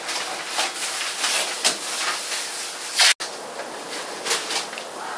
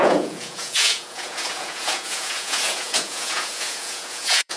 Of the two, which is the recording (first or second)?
first